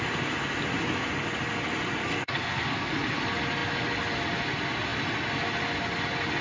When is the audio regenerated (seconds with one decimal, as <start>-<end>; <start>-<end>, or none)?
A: 2.0-2.9